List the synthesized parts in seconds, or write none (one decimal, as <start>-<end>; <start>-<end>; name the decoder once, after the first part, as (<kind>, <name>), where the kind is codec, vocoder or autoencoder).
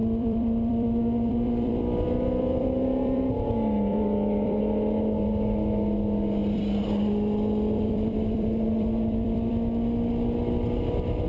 0.0-3.3 (vocoder, BigVGAN v2); 3.9-4.6; 6.4-9.5